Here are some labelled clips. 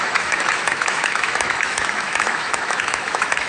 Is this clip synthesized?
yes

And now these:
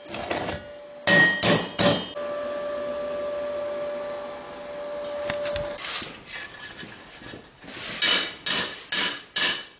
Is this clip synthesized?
no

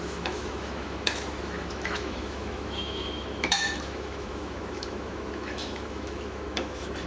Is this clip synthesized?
yes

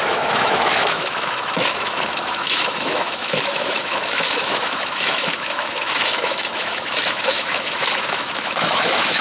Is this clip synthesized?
yes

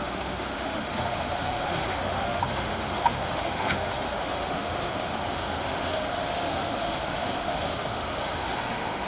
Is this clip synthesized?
yes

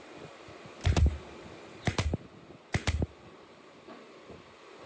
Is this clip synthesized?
no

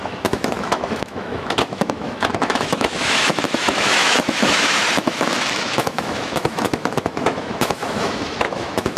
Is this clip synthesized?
yes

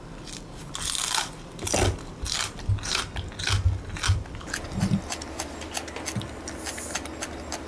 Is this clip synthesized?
no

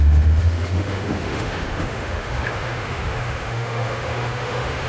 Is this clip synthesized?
yes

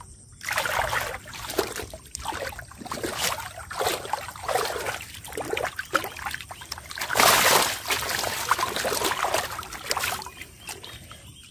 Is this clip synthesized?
no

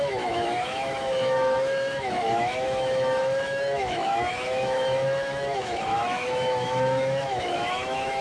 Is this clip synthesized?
yes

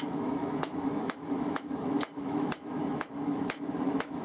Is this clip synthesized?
yes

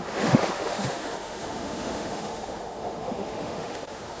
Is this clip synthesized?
yes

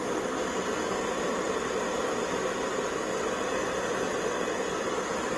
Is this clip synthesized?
no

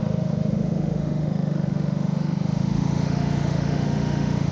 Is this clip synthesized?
yes